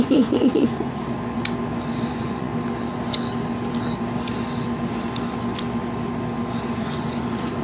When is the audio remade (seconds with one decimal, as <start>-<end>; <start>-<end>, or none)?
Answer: 0.0-1.0; 2.1-2.5; 6.7-7.6